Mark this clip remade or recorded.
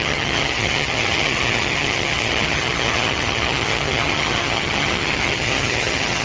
remade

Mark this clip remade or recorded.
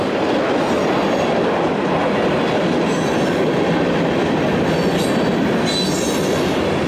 recorded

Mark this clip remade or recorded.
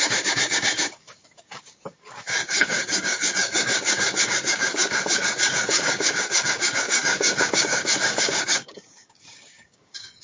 remade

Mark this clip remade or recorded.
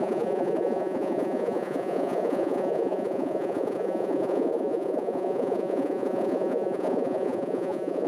remade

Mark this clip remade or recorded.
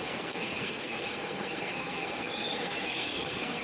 remade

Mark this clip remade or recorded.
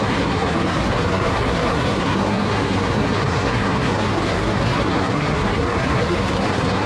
remade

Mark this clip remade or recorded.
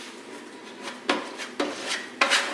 recorded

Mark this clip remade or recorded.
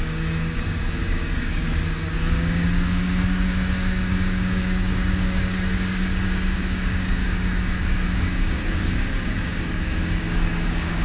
remade